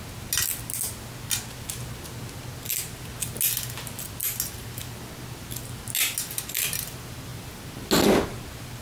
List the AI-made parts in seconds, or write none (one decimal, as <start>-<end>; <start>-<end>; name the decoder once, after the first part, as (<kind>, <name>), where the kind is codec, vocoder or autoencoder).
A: none